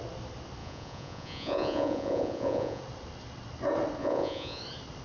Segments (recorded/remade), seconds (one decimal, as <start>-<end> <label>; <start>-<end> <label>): 0.0-0.6 recorded; 0.6-2.8 remade; 2.8-4.0 recorded; 4.0-4.6 remade; 4.6-5.0 recorded